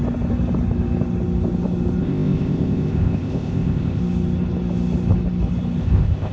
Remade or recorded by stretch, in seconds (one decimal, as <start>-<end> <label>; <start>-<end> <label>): 0.0-2.0 recorded; 2.0-4.0 remade; 4.0-5.8 recorded; 5.8-6.3 remade